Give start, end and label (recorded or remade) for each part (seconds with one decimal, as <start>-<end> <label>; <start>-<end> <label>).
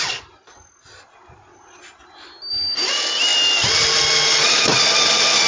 0.0-5.5 recorded